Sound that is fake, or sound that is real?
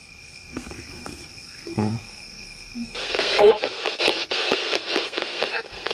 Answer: fake